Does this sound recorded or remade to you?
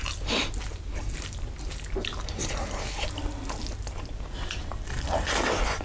recorded